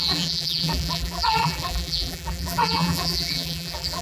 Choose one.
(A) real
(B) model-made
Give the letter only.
B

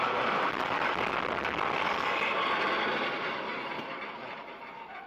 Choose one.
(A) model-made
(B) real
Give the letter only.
B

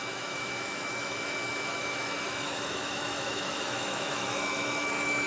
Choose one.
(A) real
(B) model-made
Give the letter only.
B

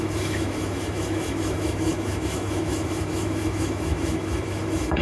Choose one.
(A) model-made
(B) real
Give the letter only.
A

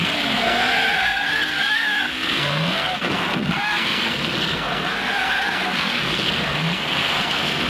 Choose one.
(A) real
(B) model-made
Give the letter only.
B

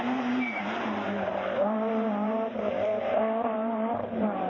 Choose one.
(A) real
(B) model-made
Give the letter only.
B